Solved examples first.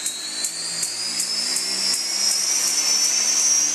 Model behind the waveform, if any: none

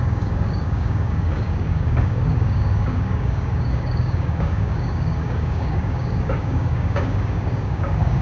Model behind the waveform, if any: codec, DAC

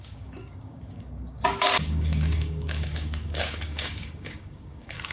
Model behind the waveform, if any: codec, DAC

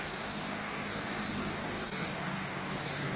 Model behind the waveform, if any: codec, DAC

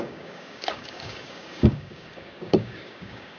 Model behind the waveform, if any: codec, DAC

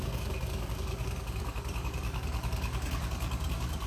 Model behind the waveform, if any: codec, DAC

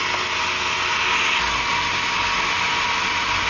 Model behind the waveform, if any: none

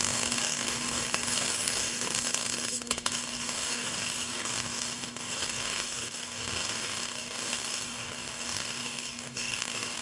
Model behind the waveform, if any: codec, DAC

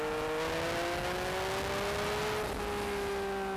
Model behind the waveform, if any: none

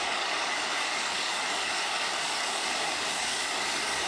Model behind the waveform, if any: codec, DAC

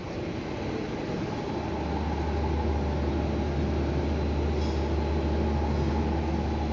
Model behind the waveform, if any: none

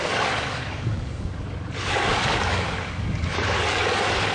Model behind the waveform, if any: codec, DAC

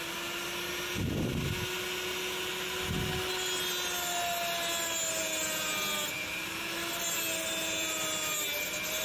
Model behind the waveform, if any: none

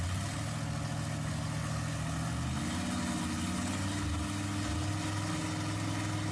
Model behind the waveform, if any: none